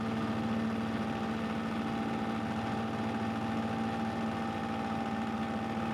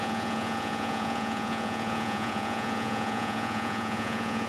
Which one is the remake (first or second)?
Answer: second